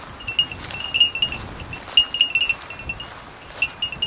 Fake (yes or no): no